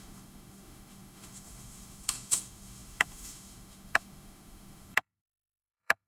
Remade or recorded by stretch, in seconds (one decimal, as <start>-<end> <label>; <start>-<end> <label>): 0.0-6.1 remade

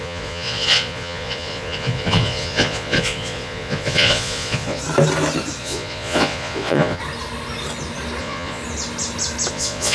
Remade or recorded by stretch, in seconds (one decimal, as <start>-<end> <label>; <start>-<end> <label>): 0.0-4.8 remade; 4.8-5.6 recorded; 5.6-7.0 remade; 7.0-8.2 recorded; 8.2-8.6 remade; 8.6-9.5 recorded; 9.5-9.9 remade